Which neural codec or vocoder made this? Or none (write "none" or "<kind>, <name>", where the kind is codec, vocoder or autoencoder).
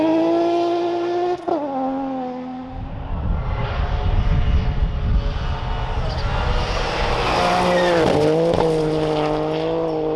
none